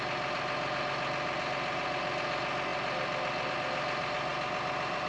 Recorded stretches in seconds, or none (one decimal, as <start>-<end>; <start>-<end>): 0.0-5.1